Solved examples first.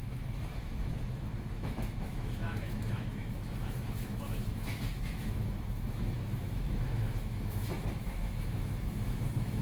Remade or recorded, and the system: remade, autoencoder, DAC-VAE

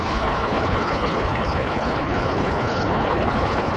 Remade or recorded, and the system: remade, codec, HILCodec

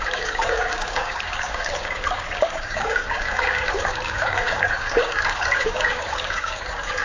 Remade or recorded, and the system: remade, codec, DAC